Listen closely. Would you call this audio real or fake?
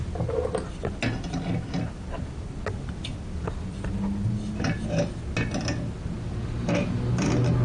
real